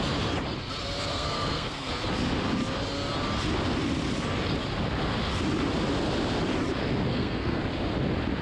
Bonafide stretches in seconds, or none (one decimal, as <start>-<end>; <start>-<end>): 0.0-1.1; 1.9-7.1; 7.6-8.4